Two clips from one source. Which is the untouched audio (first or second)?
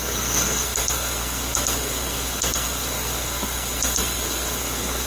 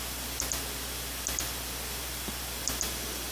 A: second